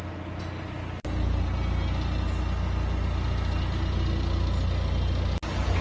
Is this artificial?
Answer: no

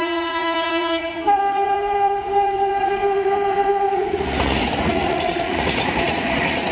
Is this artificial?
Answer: yes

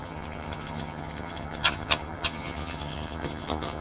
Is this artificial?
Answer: yes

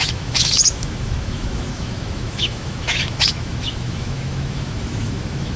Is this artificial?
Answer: yes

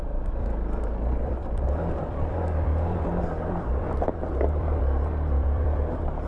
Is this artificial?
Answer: yes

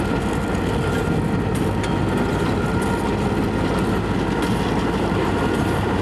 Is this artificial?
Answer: no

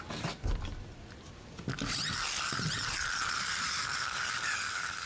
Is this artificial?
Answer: no